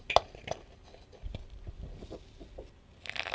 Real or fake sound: real